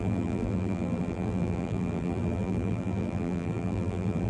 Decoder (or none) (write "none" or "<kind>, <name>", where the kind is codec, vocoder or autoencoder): vocoder, BigVGAN v2